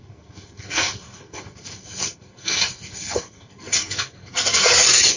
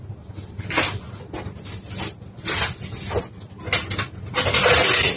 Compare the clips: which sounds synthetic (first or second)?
first